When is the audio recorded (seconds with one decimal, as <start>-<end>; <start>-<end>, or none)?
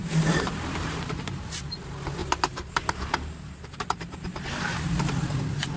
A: 1.6-2.2; 4.5-5.8